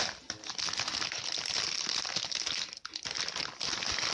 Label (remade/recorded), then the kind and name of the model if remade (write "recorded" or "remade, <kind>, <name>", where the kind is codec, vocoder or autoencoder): recorded